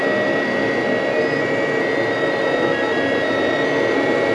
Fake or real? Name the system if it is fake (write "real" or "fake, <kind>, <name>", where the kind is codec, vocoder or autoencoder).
real